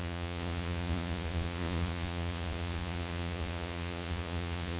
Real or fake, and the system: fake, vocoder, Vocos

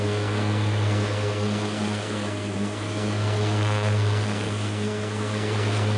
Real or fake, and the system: fake, codec, SNAC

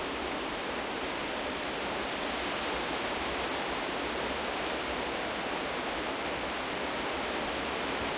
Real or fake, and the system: real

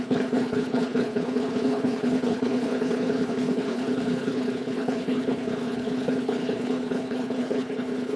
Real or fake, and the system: fake, codec, HILCodec